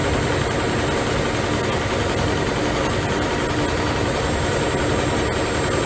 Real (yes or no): yes